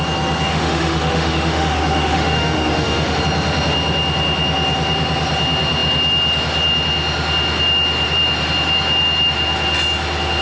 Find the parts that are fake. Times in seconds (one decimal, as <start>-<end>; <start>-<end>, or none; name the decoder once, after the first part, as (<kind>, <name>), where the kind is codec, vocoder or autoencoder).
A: 0.5-3.2 (autoencoder, DAC-VAE)